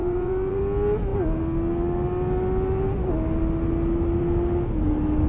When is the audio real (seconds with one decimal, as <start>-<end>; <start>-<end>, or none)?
0.6-5.3